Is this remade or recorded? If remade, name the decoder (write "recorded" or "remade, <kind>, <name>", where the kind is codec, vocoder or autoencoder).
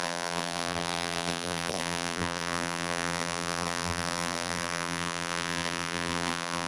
remade, vocoder, BigVGAN v2